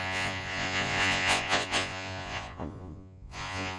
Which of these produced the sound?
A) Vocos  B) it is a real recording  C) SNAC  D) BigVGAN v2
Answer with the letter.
A